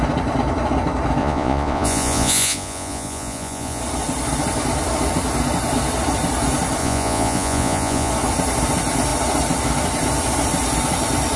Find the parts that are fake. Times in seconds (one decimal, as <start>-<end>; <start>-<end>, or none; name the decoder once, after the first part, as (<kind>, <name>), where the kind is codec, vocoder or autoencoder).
1.2-3.8 (vocoder, Vocos); 6.8-8.1